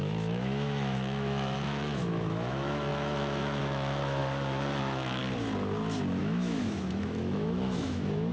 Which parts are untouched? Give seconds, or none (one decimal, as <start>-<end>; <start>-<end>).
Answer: 4.2-4.8; 5.2-6.2